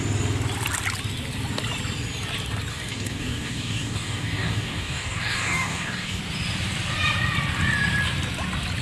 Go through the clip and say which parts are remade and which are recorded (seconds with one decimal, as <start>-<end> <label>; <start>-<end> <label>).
0.0-2.7 recorded; 2.7-6.2 remade; 6.2-8.8 recorded